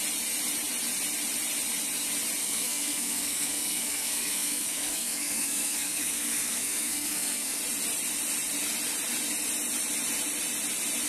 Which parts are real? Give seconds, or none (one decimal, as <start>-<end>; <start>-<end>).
0.0-2.4; 7.6-11.1